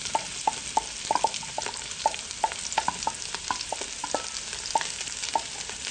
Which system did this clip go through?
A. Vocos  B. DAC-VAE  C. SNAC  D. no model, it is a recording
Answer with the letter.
D